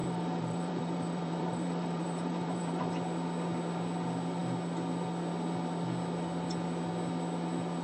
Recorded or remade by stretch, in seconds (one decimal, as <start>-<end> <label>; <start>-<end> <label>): 0.0-2.9 remade; 2.9-7.8 recorded